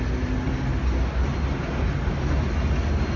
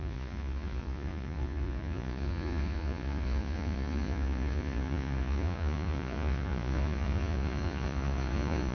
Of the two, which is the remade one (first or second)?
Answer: second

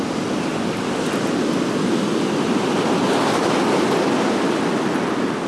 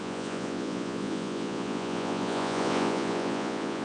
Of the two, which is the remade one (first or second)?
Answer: second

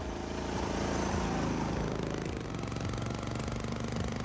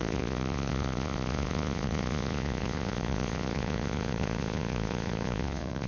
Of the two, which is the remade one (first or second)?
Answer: second